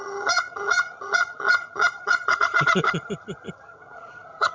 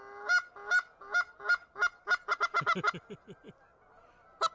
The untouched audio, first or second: second